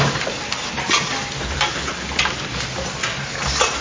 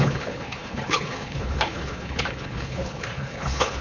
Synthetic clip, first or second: second